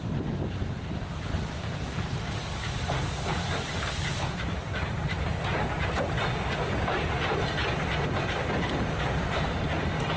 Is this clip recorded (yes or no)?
yes